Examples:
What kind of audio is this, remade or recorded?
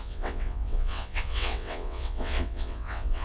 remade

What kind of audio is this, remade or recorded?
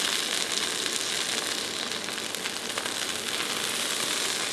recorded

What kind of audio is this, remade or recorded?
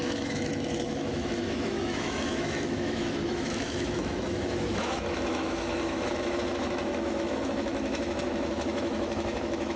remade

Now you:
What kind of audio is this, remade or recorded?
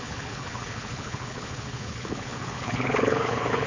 remade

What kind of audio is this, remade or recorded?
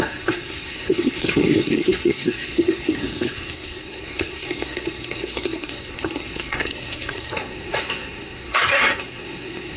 remade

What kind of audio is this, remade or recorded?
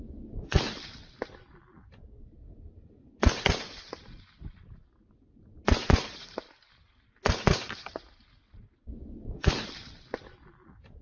recorded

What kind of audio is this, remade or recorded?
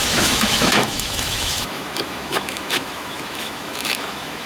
remade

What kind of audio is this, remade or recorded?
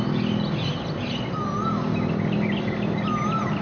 recorded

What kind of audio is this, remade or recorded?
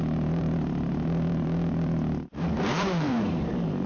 remade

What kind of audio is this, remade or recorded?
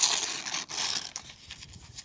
recorded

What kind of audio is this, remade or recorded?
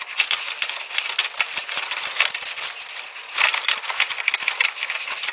recorded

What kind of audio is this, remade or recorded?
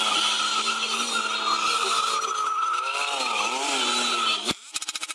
recorded